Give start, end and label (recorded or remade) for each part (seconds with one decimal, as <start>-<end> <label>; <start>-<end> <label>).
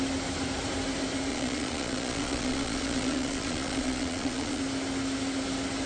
0.0-1.3 recorded; 1.3-4.6 remade; 4.6-5.9 recorded